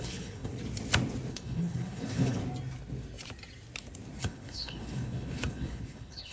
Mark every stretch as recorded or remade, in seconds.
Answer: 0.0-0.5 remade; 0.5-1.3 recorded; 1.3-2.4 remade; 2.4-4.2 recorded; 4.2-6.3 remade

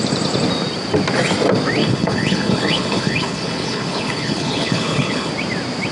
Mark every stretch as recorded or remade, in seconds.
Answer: 0.0-1.8 recorded; 1.8-5.3 remade; 5.3-5.9 recorded

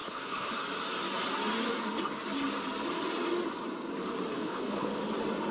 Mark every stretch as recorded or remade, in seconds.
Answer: 0.0-0.5 remade; 0.5-4.3 recorded; 4.3-4.9 remade; 4.9-5.5 recorded

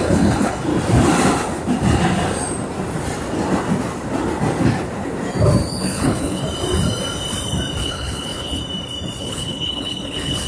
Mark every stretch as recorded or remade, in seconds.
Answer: 0.0-0.7 remade; 0.7-5.7 recorded; 5.7-6.4 remade; 6.4-7.8 recorded; 7.8-8.6 remade; 8.6-9.2 recorded; 9.2-10.5 remade

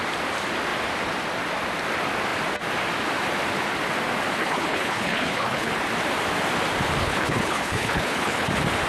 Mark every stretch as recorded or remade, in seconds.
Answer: 0.0-4.4 recorded; 4.4-5.7 remade; 5.7-7.0 recorded; 7.0-8.5 remade; 8.5-8.9 recorded